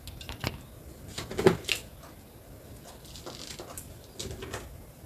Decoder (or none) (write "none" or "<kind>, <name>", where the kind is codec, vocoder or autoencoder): none